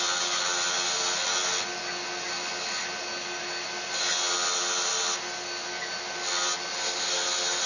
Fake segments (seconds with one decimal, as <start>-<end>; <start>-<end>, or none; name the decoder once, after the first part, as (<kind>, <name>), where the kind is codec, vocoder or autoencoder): none